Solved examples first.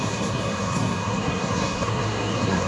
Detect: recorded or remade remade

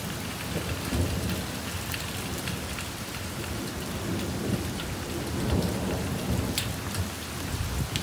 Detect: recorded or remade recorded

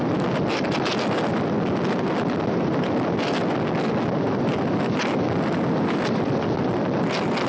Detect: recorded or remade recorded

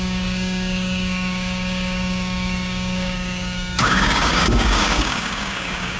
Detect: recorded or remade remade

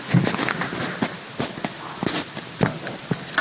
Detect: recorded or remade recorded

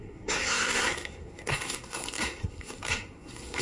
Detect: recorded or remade remade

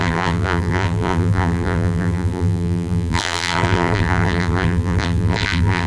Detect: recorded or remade remade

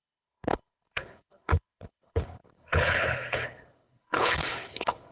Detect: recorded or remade remade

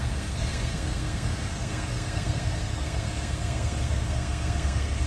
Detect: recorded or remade remade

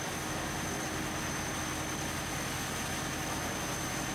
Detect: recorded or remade recorded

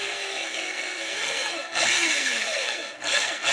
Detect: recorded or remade remade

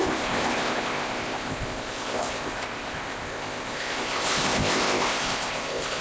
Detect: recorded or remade remade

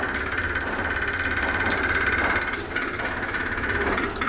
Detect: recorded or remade recorded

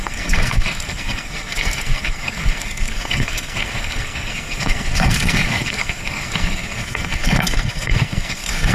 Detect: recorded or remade remade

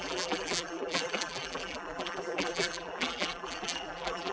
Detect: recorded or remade remade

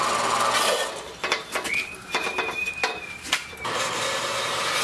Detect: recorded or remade recorded